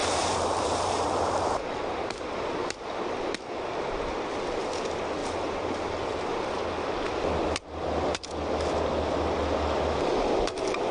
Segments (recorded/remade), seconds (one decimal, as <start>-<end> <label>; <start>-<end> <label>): 0.0-2.7 remade; 2.7-5.2 recorded; 5.2-6.4 remade; 6.4-10.9 recorded